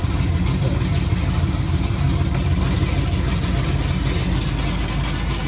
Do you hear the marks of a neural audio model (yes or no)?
no